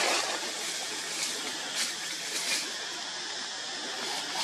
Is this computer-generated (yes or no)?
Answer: no